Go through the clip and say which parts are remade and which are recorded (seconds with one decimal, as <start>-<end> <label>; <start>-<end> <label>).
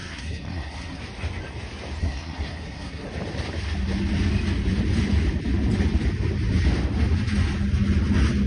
0.0-1.0 remade; 1.0-2.0 recorded; 2.0-3.1 remade; 3.1-8.5 recorded